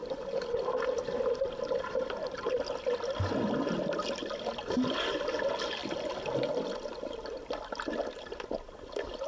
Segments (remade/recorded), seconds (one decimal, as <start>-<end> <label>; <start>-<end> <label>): 0.0-9.3 recorded